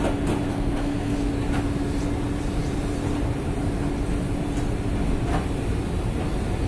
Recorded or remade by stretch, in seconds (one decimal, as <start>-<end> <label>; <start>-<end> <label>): 0.0-0.5 recorded; 0.5-1.3 remade; 1.3-6.7 recorded